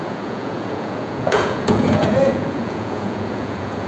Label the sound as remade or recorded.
remade